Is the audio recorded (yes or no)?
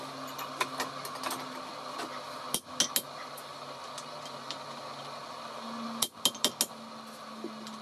yes